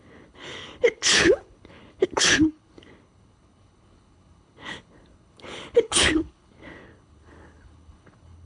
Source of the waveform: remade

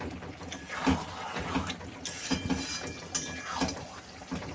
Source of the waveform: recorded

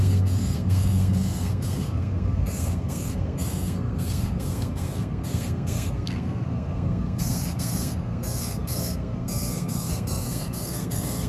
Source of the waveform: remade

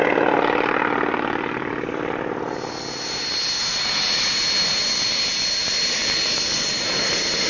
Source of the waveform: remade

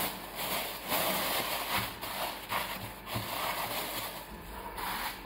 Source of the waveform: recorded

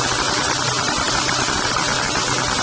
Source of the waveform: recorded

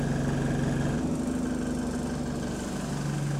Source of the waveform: recorded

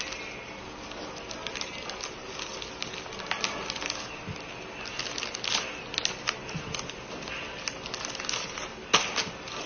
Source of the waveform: recorded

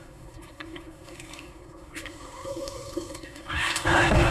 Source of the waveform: remade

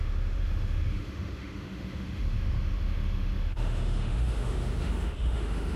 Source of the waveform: remade